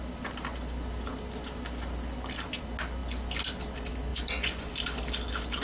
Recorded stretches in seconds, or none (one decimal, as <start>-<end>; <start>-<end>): 0.0-4.1; 4.7-5.6